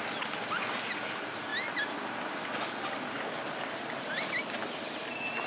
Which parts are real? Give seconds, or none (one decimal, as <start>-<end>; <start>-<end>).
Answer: 0.0-5.5